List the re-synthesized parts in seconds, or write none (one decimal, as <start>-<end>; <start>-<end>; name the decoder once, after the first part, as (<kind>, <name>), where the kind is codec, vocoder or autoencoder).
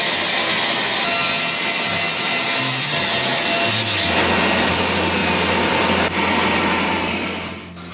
none